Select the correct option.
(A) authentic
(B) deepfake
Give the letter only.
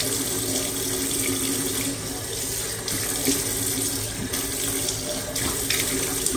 A